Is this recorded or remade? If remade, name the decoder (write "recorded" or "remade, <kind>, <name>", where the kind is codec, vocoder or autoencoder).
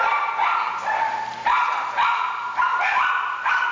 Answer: recorded